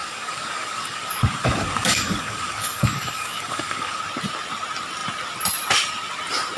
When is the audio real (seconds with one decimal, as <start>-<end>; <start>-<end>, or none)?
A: 4.0-6.6